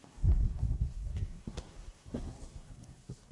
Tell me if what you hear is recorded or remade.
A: remade